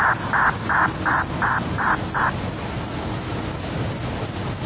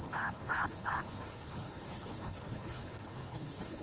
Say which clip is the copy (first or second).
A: second